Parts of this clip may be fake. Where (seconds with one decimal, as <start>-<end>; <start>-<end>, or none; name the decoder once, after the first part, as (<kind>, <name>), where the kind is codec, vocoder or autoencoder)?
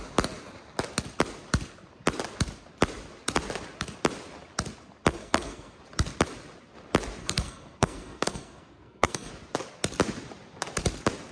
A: 5.1-5.8 (codec, SNAC); 7.2-9.3